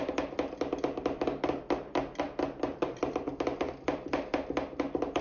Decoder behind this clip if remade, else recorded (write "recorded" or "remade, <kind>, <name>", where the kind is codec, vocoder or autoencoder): remade, vocoder, BigVGAN v2